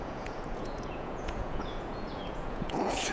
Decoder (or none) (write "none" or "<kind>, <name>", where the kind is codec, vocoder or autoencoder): vocoder, Vocos